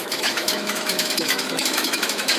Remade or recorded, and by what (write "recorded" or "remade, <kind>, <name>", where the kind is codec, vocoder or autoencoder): remade, autoencoder, DAC-VAE